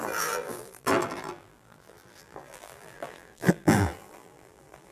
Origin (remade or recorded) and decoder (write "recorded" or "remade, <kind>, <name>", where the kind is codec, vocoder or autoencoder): remade, vocoder, BigVGAN v2